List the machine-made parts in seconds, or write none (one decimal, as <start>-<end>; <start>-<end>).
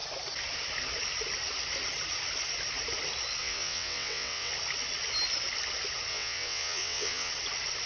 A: 3.4-4.5; 6.1-7.3